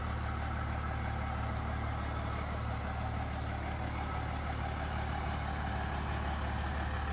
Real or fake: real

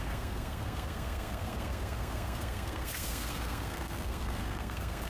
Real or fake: fake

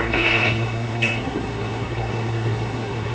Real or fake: fake